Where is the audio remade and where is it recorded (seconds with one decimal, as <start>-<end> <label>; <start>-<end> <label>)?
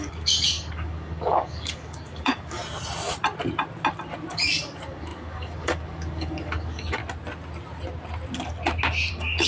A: 0.0-2.6 remade; 2.6-4.3 recorded; 4.3-7.0 remade; 7.0-9.1 recorded; 9.1-9.5 remade